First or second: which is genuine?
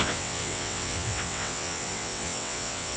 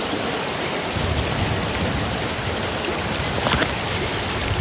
second